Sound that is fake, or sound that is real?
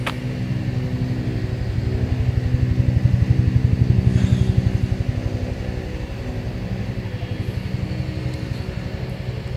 real